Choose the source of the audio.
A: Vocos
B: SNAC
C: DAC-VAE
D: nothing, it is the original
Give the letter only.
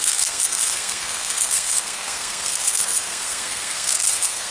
B